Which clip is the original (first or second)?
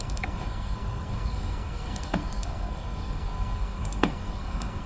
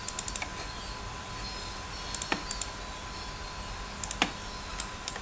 second